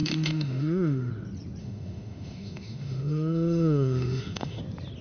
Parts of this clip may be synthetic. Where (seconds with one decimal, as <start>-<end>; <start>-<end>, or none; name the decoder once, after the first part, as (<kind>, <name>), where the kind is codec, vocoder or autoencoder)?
0.0-1.1 (autoencoder, DAC-VAE); 1.6-4.6